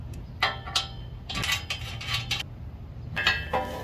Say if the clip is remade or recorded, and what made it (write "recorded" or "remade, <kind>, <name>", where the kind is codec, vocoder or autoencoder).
recorded